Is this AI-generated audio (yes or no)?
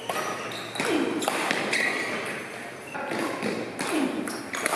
no